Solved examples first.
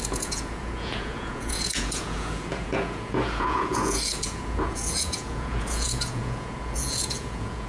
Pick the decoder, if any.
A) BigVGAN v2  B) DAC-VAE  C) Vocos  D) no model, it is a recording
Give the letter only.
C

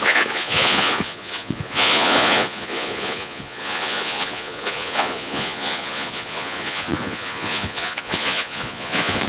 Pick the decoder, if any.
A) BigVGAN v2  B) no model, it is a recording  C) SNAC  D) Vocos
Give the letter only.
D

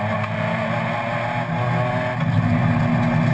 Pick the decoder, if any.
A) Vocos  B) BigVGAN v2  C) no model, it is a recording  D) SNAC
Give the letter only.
C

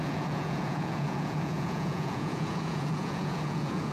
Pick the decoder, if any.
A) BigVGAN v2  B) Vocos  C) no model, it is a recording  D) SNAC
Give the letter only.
B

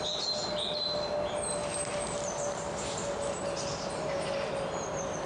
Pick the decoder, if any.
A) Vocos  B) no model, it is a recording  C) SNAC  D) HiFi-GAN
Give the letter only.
B